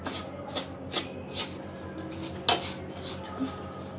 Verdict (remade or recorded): recorded